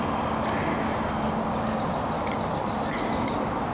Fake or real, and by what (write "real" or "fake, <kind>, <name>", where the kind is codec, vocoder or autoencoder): real